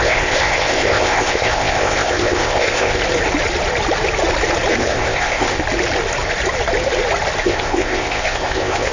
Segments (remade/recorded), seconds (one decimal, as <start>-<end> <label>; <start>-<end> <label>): 0.0-3.0 remade; 3.0-4.7 recorded; 4.7-5.6 remade; 5.6-7.4 recorded; 7.4-8.9 remade